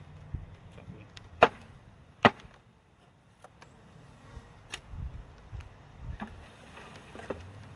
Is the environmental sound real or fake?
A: fake